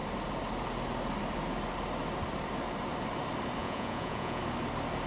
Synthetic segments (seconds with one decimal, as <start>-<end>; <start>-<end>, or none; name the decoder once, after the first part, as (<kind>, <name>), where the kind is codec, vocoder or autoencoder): 3.6-4.4 (vocoder, Vocos)